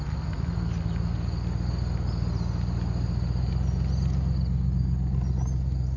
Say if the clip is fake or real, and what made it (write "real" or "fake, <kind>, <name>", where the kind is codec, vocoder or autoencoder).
real